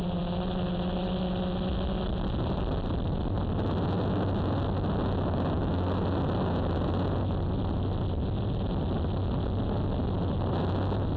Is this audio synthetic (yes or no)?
no